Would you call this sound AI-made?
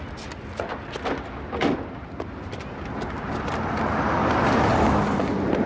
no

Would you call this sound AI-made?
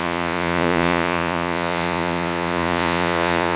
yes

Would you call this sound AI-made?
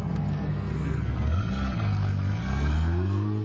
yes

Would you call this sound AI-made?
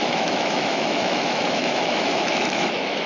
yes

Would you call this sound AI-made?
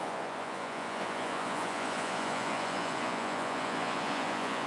yes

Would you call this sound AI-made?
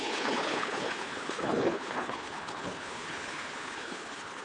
yes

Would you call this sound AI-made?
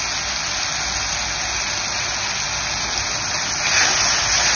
no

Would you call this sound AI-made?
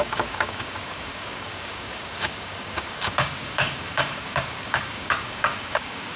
yes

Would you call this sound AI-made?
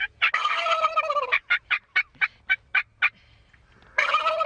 no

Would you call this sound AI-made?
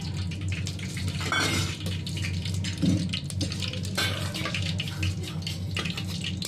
no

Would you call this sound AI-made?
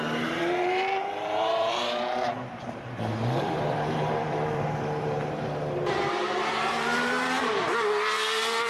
yes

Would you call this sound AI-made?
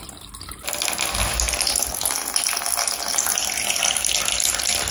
no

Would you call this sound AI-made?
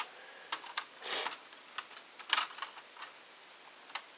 no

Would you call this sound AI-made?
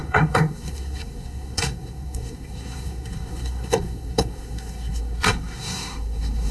yes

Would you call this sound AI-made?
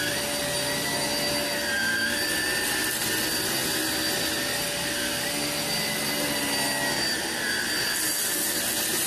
no